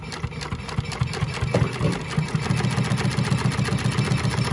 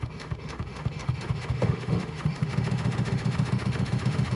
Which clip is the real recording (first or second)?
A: first